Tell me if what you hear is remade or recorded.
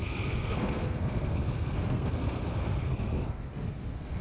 remade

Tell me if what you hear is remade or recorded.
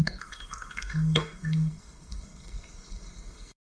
remade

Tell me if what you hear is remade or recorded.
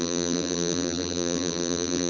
remade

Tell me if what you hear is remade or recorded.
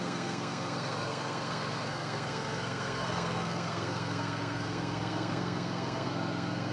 remade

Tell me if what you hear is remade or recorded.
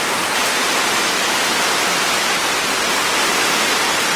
recorded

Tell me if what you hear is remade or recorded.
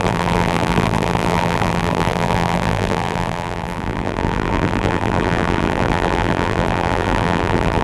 remade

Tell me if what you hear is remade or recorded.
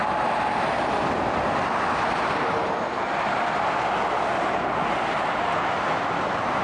recorded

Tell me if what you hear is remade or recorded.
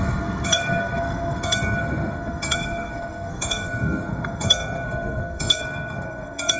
remade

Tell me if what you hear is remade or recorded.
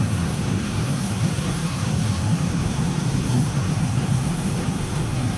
remade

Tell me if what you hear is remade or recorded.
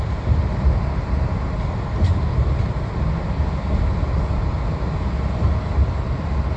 recorded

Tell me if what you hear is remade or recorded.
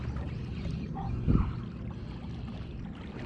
recorded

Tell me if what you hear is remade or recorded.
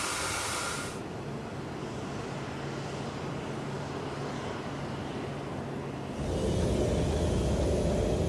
recorded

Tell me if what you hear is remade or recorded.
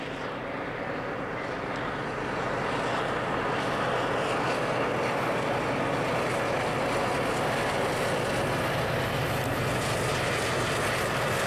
recorded